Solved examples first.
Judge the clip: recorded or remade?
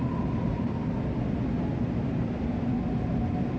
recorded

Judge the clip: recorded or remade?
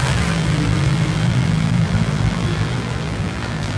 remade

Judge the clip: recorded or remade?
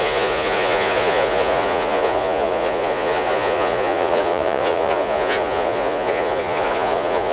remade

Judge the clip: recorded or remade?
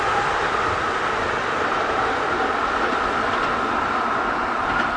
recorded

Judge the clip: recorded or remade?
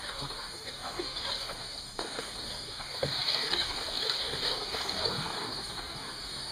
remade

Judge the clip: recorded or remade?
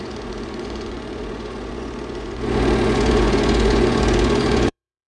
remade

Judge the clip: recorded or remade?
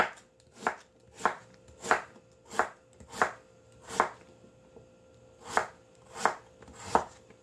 recorded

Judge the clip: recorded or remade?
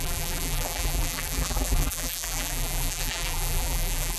remade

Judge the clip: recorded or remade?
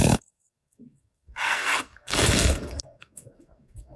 remade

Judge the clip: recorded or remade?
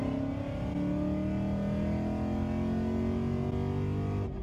recorded